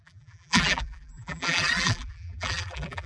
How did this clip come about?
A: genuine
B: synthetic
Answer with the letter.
B